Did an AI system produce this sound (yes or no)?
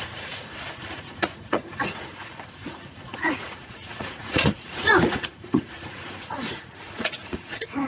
yes